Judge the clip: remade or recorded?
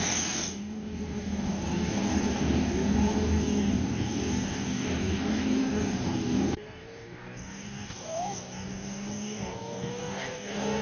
remade